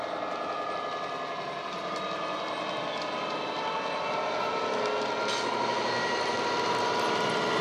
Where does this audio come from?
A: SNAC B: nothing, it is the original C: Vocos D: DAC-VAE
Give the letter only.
B